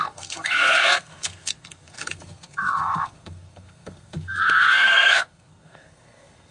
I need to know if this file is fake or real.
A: fake